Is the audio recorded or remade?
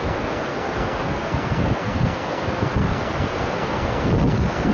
remade